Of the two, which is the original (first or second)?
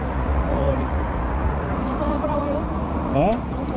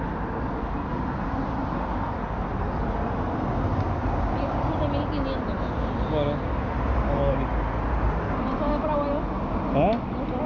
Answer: second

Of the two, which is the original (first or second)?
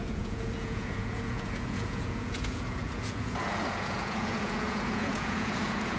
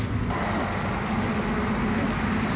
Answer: second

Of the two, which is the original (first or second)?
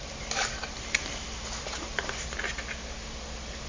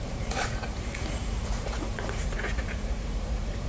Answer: first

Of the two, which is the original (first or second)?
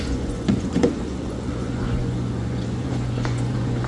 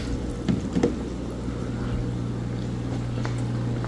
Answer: second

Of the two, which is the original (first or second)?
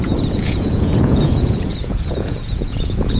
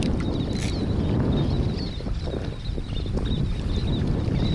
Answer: second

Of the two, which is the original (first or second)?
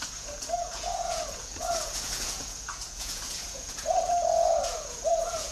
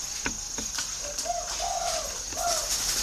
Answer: second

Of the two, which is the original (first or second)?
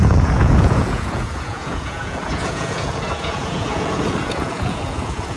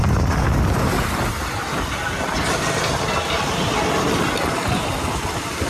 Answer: second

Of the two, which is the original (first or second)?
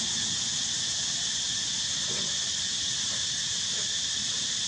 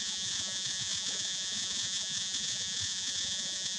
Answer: first